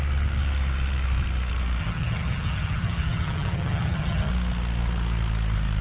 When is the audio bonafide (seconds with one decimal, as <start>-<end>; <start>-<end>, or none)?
0.0-1.8; 4.3-5.8